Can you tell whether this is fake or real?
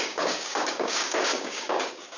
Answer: fake